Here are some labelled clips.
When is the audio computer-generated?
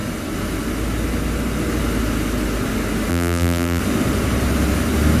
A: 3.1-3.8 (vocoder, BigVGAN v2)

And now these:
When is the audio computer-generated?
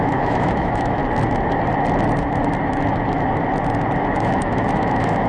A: 0.0-1.0 (autoencoder, DAC-VAE); 4.2-5.3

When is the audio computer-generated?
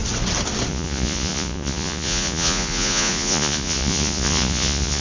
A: 0.7-5.0 (vocoder, Vocos)